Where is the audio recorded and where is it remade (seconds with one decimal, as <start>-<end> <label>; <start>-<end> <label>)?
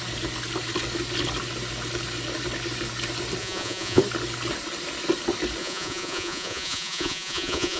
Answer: 0.0-3.4 recorded; 3.4-4.0 remade; 4.0-5.6 recorded; 5.6-7.8 remade